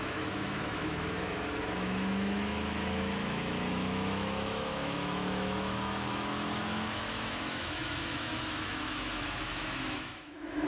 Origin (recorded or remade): remade